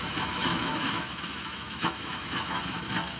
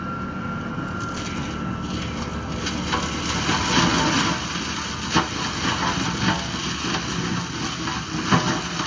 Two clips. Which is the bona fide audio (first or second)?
second